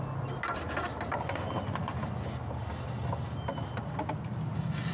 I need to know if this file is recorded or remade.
recorded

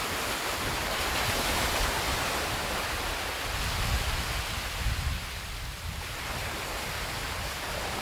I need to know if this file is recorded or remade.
recorded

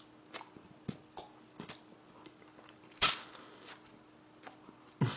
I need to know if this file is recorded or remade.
recorded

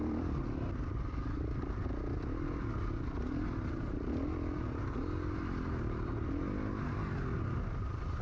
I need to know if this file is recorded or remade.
recorded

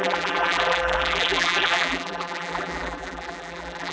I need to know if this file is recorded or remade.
remade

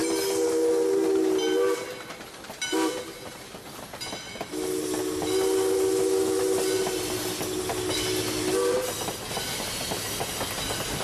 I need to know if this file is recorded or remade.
recorded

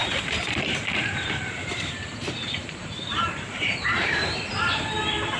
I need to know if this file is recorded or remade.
remade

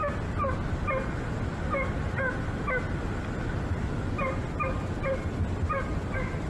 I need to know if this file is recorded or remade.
recorded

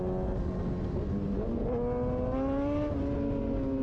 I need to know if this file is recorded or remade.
recorded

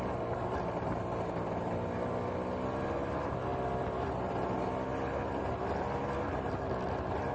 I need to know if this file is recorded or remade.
recorded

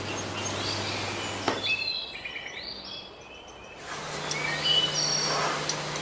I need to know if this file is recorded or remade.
recorded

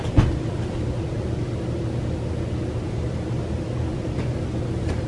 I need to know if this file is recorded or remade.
recorded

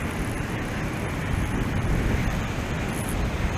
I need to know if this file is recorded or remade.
remade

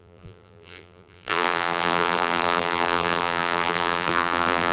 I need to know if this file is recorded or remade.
remade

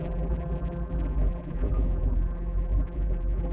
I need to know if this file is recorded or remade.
remade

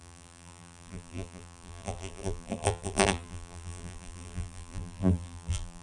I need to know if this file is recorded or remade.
remade